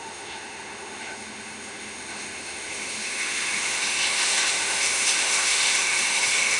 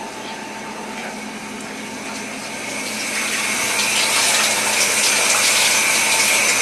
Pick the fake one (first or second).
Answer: first